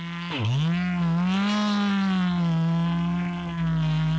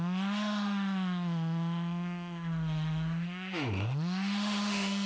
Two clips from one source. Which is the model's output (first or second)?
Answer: second